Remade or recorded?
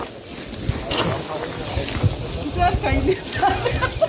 recorded